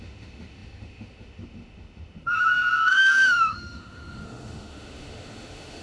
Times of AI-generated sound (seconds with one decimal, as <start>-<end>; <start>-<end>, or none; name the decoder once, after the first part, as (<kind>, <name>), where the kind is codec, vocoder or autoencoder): 0.0-5.8 (autoencoder, DAC-VAE)